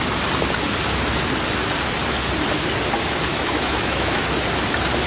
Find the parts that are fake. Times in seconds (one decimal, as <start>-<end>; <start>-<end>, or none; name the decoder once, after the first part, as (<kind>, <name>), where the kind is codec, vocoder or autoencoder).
3.3-4.2 (autoencoder, DAC-VAE)